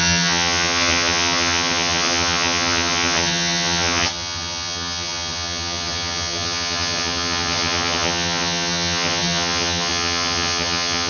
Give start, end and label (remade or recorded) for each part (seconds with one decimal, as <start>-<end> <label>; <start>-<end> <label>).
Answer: 0.0-11.1 remade